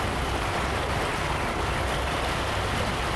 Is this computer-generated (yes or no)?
no